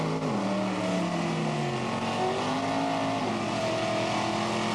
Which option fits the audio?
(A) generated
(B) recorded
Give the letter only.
B